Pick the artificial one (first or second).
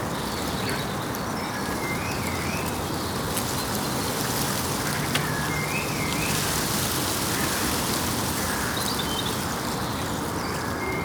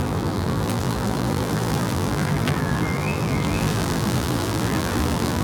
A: second